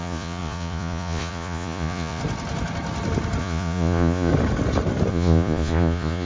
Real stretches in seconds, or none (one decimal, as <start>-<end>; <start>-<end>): 2.2-3.4; 4.3-5.1